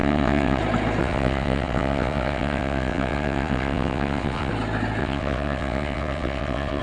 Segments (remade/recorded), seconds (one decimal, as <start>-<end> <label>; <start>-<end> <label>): 0.0-0.6 remade; 0.6-1.0 recorded; 1.0-4.5 remade; 4.5-5.0 recorded; 5.0-6.8 remade